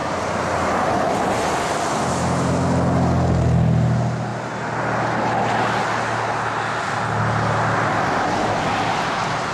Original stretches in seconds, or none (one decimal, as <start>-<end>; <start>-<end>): 0.0-9.5